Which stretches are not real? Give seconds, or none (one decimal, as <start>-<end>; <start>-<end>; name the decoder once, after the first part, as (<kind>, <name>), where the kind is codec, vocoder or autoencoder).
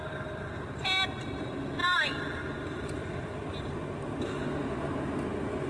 0.0-0.7 (vocoder, BigVGAN v2); 1.8-4.4